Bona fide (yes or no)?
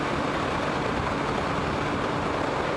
yes